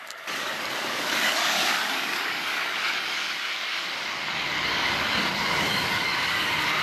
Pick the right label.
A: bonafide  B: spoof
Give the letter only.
B